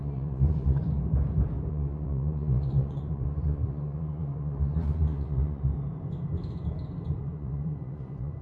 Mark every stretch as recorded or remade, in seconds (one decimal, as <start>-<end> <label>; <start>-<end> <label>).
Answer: 0.0-0.8 remade; 0.8-1.7 recorded; 1.7-5.7 remade; 5.7-7.1 recorded; 7.1-8.4 remade

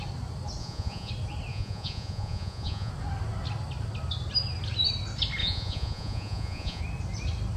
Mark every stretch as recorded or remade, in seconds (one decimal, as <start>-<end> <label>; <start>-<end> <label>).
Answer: 0.0-0.6 recorded; 0.6-1.1 remade; 1.1-1.5 recorded; 1.5-2.9 remade; 2.9-5.4 recorded; 5.4-6.8 remade; 6.8-7.6 recorded

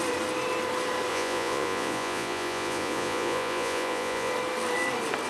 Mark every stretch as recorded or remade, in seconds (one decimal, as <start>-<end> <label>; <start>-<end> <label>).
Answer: 0.0-1.1 recorded; 1.1-4.3 remade; 4.3-5.3 recorded

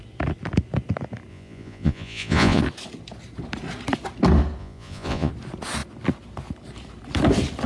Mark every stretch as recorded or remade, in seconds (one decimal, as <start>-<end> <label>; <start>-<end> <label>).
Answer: 0.0-1.3 recorded; 1.3-2.6 remade; 2.6-4.6 recorded; 4.6-5.3 remade; 5.3-7.7 recorded